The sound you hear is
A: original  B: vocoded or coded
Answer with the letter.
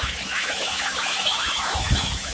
B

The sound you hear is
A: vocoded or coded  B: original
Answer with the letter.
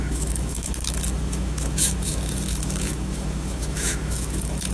A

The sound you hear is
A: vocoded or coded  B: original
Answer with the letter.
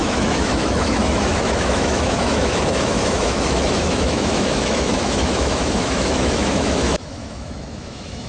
A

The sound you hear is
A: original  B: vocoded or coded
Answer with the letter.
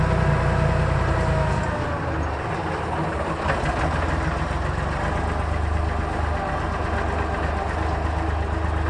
A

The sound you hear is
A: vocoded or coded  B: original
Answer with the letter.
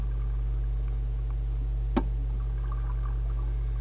B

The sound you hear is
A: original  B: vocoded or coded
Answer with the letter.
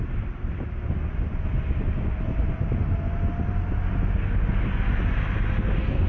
A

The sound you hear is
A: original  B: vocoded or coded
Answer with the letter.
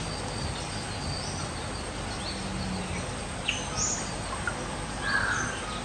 A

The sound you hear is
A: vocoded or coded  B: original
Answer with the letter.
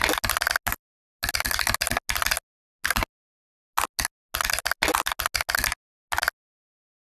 B